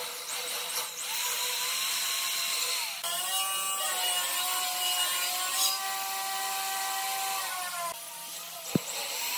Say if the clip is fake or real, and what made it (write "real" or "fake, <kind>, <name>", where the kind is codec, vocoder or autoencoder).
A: real